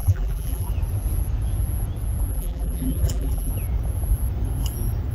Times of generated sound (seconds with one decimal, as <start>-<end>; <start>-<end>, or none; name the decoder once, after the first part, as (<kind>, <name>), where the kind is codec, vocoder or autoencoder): 0.0-0.7 (vocoder, BigVGAN v2); 2.3-3.5